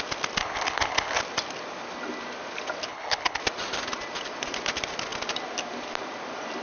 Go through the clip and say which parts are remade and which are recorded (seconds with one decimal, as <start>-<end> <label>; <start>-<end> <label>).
0.0-0.4 recorded; 0.4-1.2 remade; 1.2-2.9 recorded; 2.9-3.4 remade; 3.4-6.6 recorded